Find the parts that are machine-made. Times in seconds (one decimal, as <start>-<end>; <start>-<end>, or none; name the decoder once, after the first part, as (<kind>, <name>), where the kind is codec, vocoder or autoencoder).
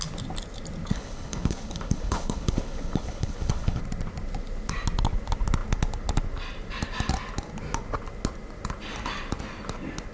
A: 0.9-3.8 (codec, HILCodec)